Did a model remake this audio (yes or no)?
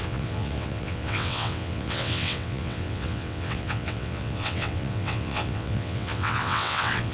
yes